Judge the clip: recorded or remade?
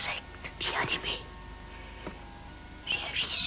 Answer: recorded